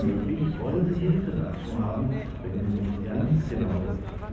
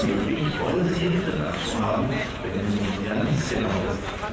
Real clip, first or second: first